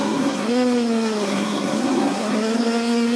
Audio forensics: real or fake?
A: fake